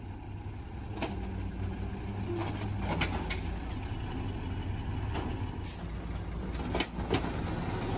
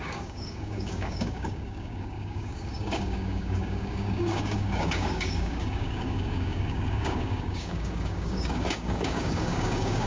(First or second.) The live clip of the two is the first